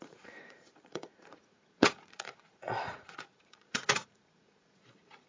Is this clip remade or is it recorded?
remade